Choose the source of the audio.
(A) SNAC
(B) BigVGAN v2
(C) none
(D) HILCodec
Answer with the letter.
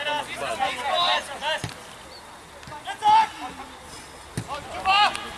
C